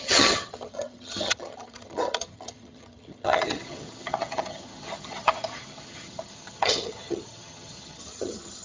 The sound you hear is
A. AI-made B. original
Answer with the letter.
A